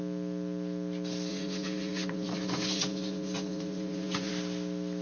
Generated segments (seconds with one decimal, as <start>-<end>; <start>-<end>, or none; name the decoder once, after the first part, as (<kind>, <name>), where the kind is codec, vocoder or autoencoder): 1.3-4.3 (vocoder, Vocos)